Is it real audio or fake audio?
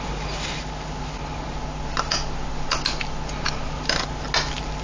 real